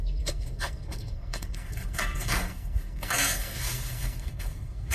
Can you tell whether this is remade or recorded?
remade